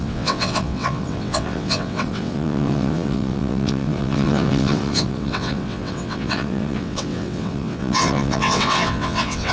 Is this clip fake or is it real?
fake